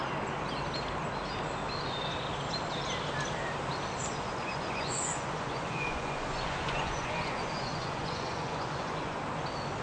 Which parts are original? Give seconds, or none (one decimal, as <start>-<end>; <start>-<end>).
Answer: 0.0-4.1; 9.2-9.8